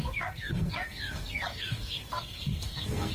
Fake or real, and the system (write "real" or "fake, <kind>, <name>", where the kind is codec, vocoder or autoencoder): fake, codec, SNAC